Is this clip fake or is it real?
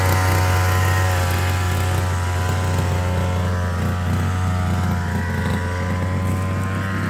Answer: real